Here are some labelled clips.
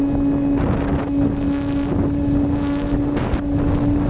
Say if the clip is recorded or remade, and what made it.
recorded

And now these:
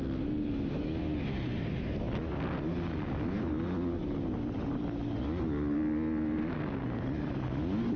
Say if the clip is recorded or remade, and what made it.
recorded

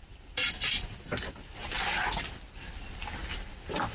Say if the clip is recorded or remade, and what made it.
recorded